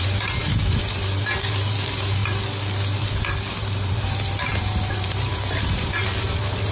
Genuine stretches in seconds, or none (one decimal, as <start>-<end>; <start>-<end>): 2.2-3.6